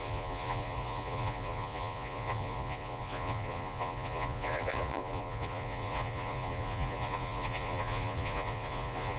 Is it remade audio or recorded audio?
remade